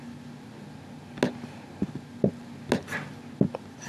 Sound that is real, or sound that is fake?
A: real